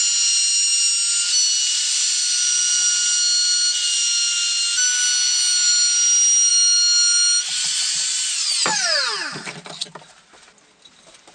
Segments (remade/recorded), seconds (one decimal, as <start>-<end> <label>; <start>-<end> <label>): 0.0-11.3 recorded